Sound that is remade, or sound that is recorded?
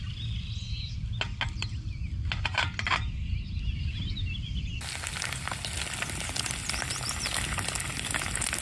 recorded